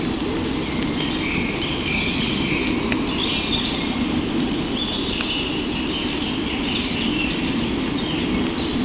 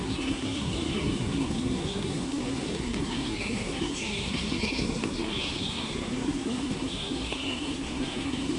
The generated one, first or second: second